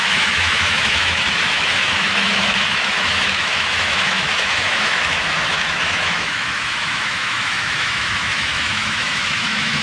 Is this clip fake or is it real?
fake